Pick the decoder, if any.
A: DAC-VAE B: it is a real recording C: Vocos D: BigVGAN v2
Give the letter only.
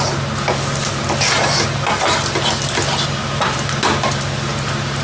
B